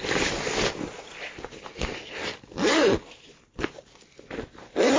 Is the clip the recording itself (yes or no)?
yes